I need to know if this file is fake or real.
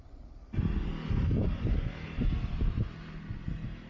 real